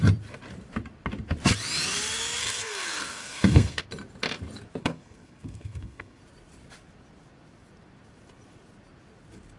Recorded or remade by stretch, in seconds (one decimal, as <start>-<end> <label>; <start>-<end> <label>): 0.0-2.4 recorded; 2.4-3.8 remade; 3.8-4.8 recorded; 4.8-6.2 remade; 6.2-9.6 recorded